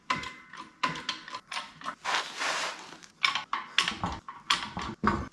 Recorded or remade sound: recorded